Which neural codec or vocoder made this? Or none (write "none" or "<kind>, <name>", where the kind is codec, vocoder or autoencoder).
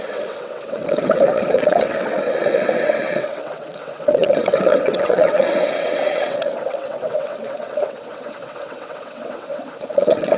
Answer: vocoder, WaveNeXt